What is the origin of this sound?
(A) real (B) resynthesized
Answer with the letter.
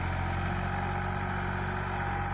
A